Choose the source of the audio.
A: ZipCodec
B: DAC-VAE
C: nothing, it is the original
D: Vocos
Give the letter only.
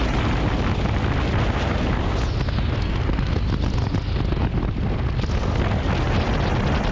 C